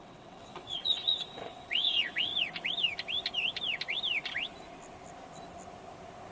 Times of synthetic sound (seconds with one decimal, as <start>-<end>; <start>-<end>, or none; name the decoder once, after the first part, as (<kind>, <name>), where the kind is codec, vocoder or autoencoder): 0.0-2.3 (vocoder, WaveNeXt)